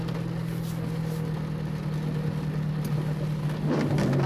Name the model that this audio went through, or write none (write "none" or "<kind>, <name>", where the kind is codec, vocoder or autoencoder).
none